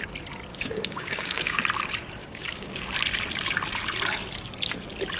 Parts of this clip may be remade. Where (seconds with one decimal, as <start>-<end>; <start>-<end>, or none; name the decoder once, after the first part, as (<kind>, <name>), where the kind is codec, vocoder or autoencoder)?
0.5-1.6 (codec, DAC); 2.2-2.9